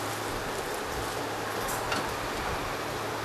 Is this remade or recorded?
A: recorded